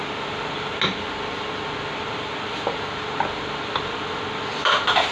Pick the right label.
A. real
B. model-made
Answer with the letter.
A